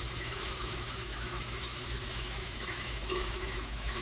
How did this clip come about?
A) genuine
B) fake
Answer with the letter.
B